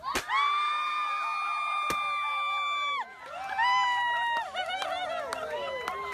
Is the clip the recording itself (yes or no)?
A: yes